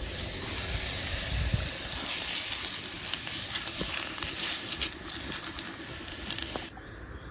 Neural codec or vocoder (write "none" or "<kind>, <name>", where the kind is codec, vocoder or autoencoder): none